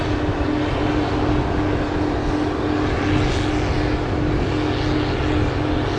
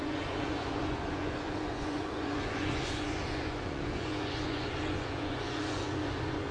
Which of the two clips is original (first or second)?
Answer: first